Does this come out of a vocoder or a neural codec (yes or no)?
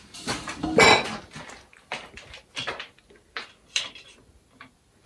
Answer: no